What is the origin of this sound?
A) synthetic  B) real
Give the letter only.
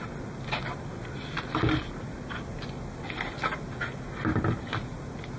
B